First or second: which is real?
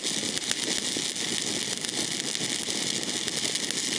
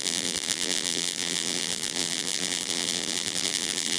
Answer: first